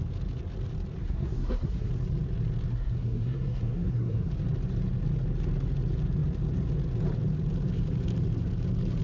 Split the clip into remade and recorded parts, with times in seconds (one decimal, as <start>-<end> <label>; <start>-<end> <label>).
0.0-1.0 recorded; 1.0-1.9 remade; 1.9-2.7 recorded; 2.7-4.3 remade; 4.3-9.0 recorded

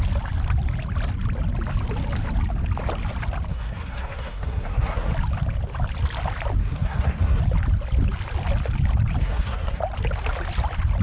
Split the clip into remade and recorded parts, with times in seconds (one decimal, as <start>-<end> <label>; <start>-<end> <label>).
0.0-3.5 recorded; 3.5-5.1 remade; 5.1-6.6 recorded; 6.6-7.4 remade; 7.4-9.2 recorded; 9.2-9.8 remade; 9.8-11.0 recorded

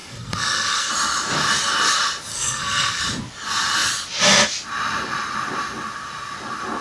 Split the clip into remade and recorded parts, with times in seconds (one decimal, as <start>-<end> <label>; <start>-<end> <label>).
0.0-0.9 remade; 0.9-2.3 recorded; 2.3-3.0 remade; 3.0-6.8 recorded

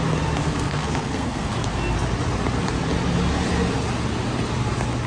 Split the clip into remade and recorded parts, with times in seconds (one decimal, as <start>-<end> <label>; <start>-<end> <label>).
0.0-0.4 recorded; 0.4-1.6 remade; 1.6-5.1 recorded

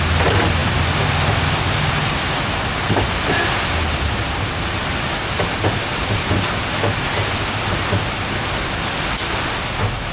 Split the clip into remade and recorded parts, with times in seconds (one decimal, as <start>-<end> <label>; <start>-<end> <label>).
0.0-10.1 recorded

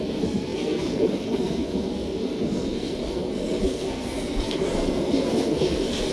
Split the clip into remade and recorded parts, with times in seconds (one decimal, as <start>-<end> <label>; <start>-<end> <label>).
0.0-6.1 remade

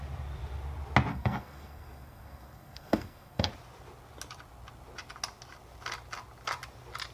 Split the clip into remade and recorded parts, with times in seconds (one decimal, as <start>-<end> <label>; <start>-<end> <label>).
0.0-1.1 recorded; 1.1-3.5 remade; 3.5-7.1 recorded